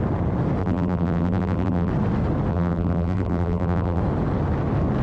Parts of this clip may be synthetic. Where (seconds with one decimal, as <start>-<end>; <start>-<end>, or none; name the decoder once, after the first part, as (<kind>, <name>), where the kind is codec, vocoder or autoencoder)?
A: 0.6-1.9 (vocoder, BigVGAN v2); 2.5-4.0